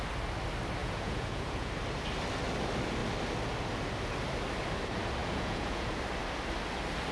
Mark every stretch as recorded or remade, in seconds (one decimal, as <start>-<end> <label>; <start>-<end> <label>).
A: 0.0-0.8 recorded; 0.8-1.7 remade; 1.7-5.2 recorded; 5.2-6.0 remade; 6.0-7.1 recorded